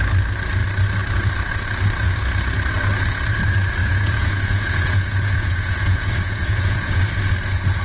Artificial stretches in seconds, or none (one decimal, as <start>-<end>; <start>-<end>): 3.8-7.0